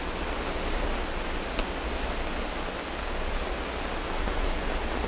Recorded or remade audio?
recorded